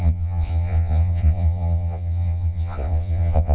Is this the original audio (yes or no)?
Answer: no